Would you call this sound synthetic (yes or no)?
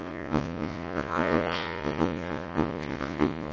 yes